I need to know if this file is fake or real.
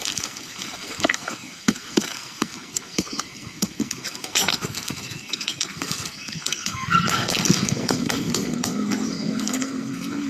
fake